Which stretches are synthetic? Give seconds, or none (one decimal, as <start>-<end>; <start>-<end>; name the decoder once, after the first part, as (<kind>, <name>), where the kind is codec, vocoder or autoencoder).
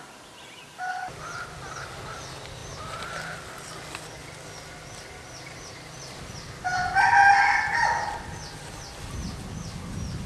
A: none